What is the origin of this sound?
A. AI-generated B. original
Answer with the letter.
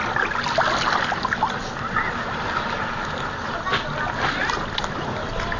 B